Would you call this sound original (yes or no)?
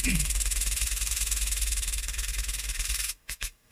no